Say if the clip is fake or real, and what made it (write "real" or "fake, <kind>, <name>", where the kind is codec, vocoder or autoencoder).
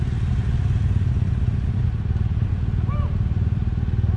real